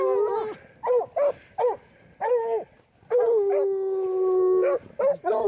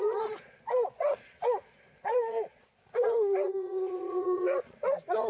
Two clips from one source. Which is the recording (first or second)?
first